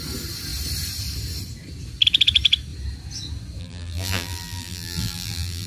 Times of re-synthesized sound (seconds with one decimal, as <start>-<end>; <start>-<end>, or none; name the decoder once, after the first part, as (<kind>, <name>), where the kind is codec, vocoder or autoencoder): 3.6-5.7 (vocoder, BigVGAN v2)

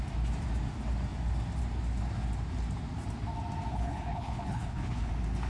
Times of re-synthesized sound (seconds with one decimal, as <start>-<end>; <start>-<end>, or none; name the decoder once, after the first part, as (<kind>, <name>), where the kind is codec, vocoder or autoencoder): 3.7-5.1 (codec, HILCodec)

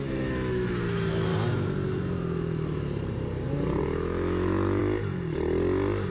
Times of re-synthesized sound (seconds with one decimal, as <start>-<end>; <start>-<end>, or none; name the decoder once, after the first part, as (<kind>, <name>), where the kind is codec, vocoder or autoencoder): 0.0-1.3 (autoencoder, DAC-VAE); 3.8-4.8

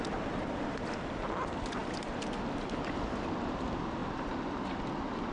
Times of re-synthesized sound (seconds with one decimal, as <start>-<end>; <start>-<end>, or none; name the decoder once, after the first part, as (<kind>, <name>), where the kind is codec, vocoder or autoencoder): none